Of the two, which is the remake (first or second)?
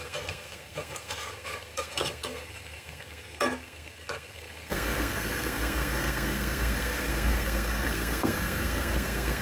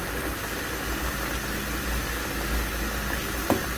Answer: first